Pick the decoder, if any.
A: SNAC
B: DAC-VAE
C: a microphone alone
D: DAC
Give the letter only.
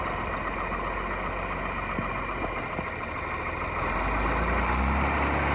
C